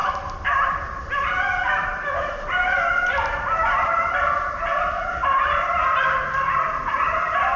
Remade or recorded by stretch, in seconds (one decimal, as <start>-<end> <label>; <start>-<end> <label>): 0.0-4.6 remade; 4.6-7.6 recorded